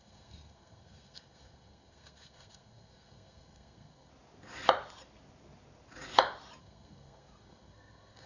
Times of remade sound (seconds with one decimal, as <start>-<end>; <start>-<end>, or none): 0.0-4.1; 6.6-8.3